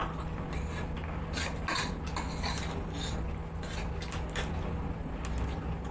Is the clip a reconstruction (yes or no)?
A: no